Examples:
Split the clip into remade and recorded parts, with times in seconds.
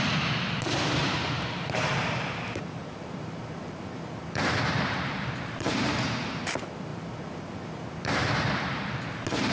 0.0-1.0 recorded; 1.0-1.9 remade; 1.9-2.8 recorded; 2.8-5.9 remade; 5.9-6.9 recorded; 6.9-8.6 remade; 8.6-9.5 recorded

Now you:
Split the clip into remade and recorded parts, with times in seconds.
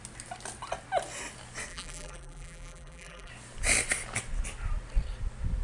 0.0-1.7 recorded; 1.7-3.3 remade; 3.3-5.6 recorded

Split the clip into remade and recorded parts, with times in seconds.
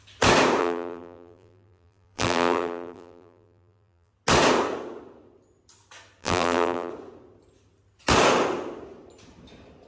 0.0-0.6 recorded; 0.6-4.1 remade; 4.1-6.2 recorded; 6.2-6.9 remade; 6.9-9.9 recorded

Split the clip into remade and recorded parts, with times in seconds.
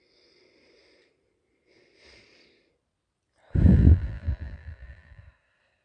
0.0-3.7 recorded; 3.7-5.2 remade; 5.2-5.8 recorded